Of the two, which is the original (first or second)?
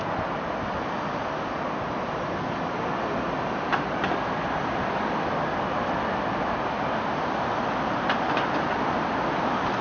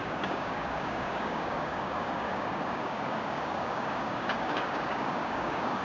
first